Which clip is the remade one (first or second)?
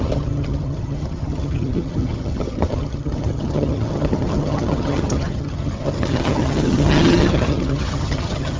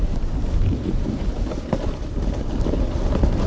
first